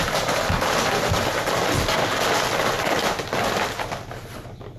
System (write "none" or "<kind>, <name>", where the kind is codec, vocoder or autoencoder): none